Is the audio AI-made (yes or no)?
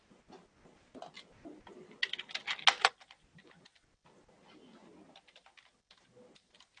no